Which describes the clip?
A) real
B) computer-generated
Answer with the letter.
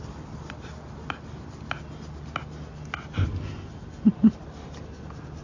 A